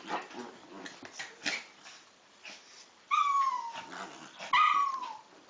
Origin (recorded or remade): recorded